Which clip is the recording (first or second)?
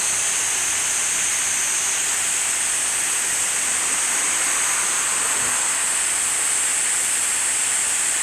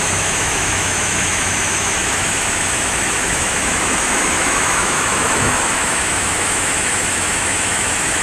first